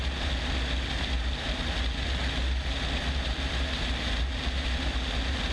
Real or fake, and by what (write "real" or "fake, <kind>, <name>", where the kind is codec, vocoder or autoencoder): real